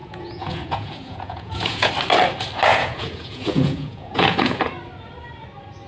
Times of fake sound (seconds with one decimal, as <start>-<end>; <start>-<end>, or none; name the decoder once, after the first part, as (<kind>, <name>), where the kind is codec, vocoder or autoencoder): 0.0-1.9 (vocoder, Vocos); 2.7-4.7